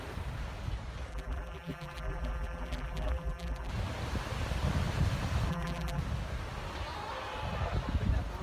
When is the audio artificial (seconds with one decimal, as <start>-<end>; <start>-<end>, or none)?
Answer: 1.1-3.7; 5.5-6.0